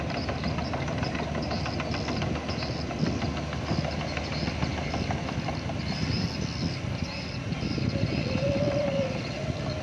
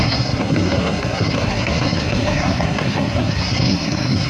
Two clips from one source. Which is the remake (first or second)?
second